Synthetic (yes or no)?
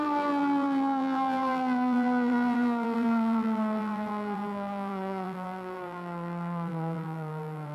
yes